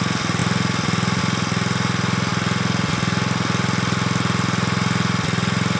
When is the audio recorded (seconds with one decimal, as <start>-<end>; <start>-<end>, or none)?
0.0-5.8